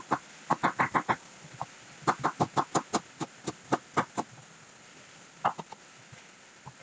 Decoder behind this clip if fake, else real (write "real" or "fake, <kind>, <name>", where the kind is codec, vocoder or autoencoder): real